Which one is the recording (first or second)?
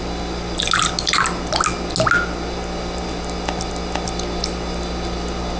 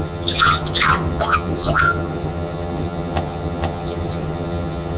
first